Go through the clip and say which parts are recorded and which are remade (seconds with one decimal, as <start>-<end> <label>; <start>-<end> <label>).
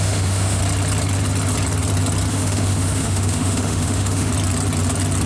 0.0-0.6 remade; 0.6-2.3 recorded; 2.3-4.3 remade; 4.3-5.3 recorded